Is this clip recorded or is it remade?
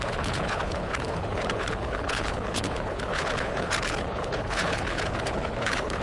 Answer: remade